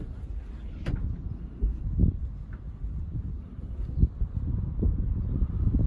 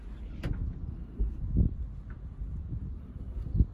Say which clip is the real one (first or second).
second